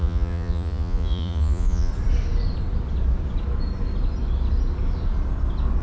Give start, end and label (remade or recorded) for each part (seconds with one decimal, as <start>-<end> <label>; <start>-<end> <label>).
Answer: 0.0-1.9 remade; 1.9-5.8 recorded